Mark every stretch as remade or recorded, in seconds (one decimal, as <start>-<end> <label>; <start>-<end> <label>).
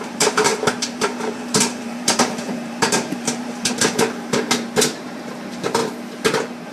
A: 0.0-5.8 remade; 5.8-6.7 recorded